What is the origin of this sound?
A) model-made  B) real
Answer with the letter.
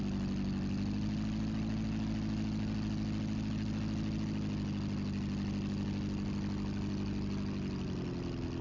B